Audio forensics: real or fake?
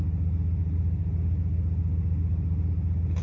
real